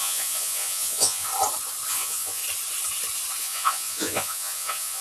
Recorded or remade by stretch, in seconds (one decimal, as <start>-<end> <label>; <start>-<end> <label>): 0.0-1.3 remade; 1.3-1.9 recorded; 1.9-2.4 remade; 2.4-3.4 recorded; 3.4-5.0 remade